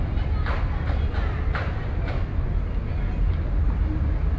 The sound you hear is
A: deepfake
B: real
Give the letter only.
B